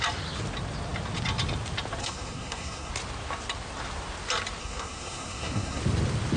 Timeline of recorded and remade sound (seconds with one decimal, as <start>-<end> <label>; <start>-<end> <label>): 0.0-2.0 recorded; 2.0-2.9 remade; 2.9-4.6 recorded; 4.6-5.8 remade; 5.8-6.4 recorded

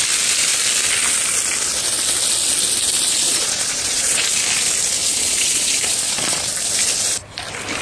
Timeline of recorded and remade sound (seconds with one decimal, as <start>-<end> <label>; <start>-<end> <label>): 0.0-3.1 recorded; 3.1-4.2 remade; 4.2-5.0 recorded; 5.0-6.5 remade; 6.5-7.8 recorded